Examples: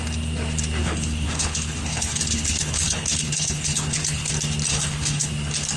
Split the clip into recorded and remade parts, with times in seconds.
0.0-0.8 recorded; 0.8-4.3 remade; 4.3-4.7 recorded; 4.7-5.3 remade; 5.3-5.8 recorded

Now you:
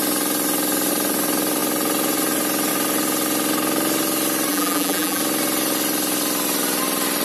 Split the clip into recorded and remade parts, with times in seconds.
0.0-4.5 recorded; 4.5-5.2 remade; 5.2-7.2 recorded